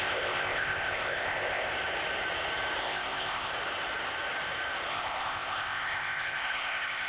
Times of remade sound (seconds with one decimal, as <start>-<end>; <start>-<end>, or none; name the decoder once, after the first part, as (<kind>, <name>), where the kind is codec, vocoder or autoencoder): 0.0-1.7 (codec, ZipCodec); 2.8-3.5; 4.9-7.1